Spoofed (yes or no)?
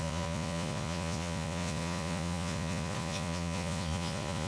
yes